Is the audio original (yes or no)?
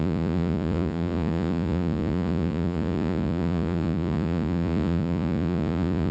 no